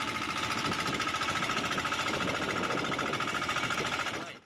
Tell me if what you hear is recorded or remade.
recorded